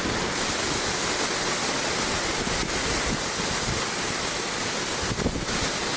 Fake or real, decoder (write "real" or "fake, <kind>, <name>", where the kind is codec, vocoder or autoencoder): real